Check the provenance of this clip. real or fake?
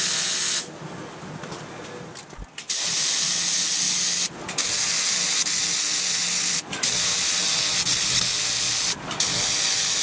real